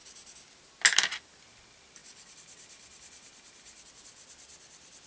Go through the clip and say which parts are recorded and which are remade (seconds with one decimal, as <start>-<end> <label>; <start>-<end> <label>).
0.0-5.1 recorded